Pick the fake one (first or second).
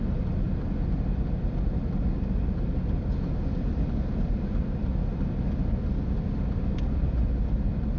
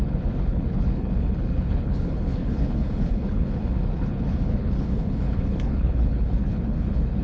second